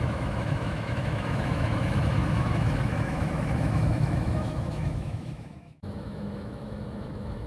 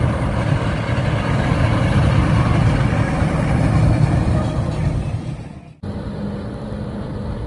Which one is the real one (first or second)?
second